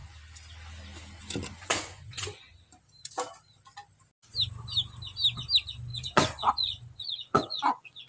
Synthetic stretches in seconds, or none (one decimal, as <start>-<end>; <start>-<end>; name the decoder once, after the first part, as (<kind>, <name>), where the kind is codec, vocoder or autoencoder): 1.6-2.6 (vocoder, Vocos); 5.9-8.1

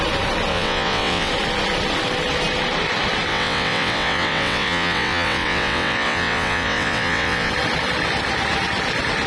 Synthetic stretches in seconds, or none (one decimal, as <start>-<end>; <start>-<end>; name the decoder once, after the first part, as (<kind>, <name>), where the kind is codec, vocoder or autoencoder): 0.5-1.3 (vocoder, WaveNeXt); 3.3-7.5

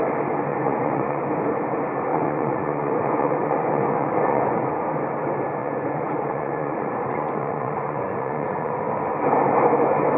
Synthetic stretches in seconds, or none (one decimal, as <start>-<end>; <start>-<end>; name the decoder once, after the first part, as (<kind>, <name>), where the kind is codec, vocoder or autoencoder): 0.5-1.2 (vocoder, Vocos); 2.1-4.7; 5.6-8.8

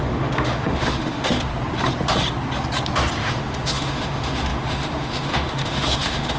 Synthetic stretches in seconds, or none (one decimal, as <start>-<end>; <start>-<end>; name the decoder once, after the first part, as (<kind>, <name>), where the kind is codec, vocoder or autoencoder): 0.0-1.5 (autoencoder, DAC-VAE); 3.2-6.4

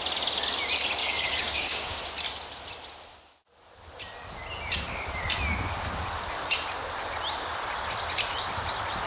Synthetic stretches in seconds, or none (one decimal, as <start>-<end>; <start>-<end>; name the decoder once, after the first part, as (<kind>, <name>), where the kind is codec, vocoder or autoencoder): 1.0-2.0 (codec, DAC)

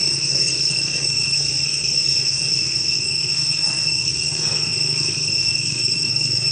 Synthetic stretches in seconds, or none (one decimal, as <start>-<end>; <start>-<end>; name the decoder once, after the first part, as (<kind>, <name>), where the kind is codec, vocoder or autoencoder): 0.0-6.5 (codec, SNAC)